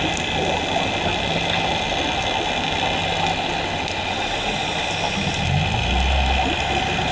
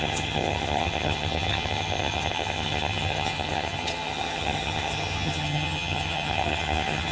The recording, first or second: first